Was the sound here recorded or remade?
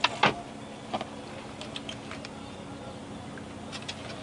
recorded